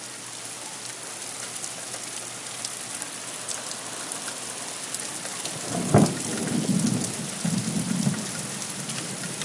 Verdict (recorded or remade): recorded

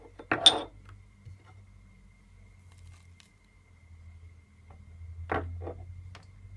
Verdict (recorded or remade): recorded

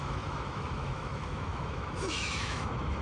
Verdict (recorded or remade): remade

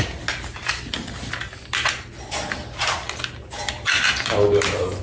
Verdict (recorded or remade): recorded